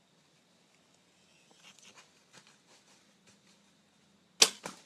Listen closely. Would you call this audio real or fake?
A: real